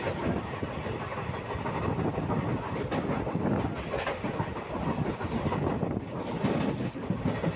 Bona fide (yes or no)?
yes